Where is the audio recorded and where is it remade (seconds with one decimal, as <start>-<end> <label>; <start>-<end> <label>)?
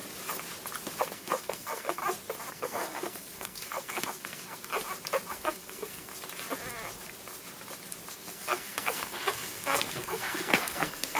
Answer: 0.0-1.0 recorded; 1.0-2.0 remade; 2.0-2.5 recorded; 2.5-4.7 remade; 4.7-5.3 recorded; 5.3-6.1 remade; 6.1-8.1 recorded; 8.1-11.2 remade